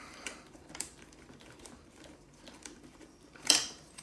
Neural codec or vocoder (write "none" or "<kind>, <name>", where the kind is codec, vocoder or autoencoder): vocoder, BigVGAN v2